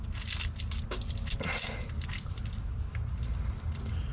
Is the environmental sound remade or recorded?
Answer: recorded